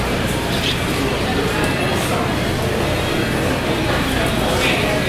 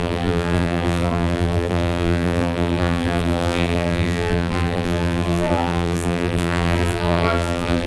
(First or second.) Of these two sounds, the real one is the first